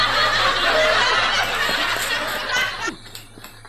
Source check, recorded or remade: recorded